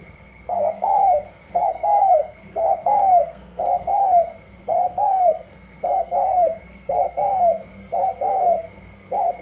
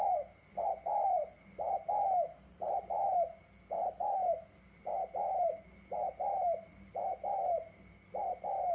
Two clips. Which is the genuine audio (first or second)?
second